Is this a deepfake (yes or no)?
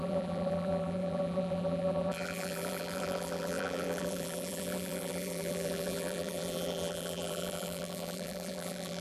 yes